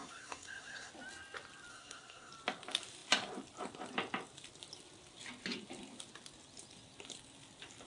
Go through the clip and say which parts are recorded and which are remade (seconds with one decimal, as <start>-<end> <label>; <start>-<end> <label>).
0.0-0.9 remade; 0.9-1.7 recorded; 1.7-2.3 remade; 2.3-7.9 recorded